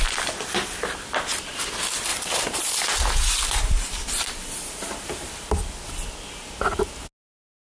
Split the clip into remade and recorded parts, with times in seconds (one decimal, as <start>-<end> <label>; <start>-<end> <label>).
0.0-2.1 recorded; 2.1-5.5 remade; 5.5-7.6 recorded